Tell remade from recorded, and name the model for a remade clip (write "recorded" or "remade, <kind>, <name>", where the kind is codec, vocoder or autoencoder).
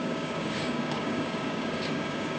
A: remade, codec, DAC